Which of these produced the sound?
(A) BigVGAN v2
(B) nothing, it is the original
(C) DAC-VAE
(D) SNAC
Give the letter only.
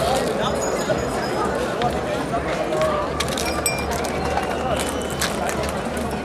B